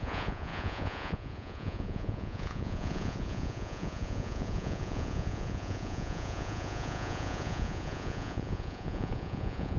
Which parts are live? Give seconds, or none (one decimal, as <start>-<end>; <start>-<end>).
none